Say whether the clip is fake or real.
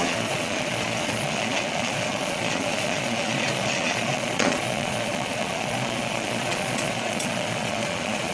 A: fake